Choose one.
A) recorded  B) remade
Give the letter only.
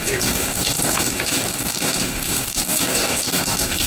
B